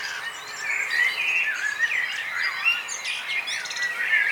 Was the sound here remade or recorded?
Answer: recorded